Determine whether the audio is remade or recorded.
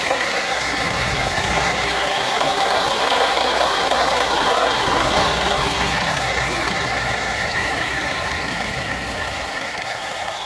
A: remade